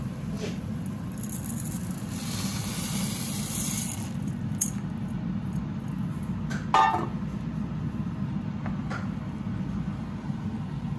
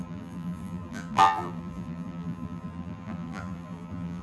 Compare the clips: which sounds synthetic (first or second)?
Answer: second